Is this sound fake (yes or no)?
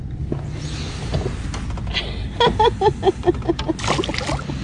no